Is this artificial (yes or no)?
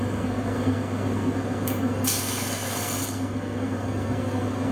yes